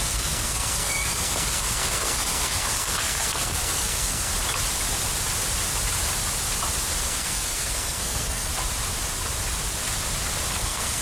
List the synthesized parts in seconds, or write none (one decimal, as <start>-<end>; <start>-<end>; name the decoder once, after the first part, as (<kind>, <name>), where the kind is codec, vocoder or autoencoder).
0.0-4.3 (codec, SNAC); 7.0-8.5; 10.5-11.0